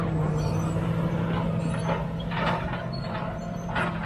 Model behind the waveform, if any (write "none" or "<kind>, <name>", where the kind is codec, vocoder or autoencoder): none